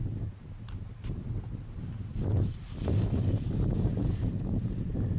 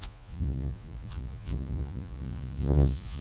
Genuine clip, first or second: first